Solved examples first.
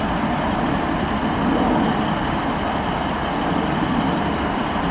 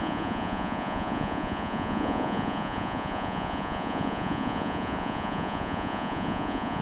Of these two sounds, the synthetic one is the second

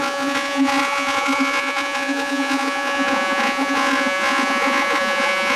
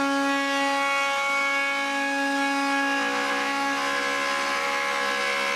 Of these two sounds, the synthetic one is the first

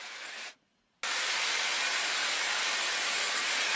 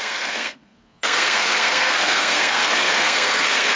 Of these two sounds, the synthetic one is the second